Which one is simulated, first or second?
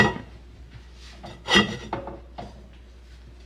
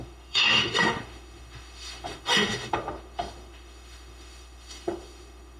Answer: second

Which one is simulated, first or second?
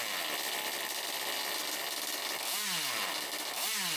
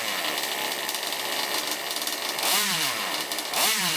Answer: second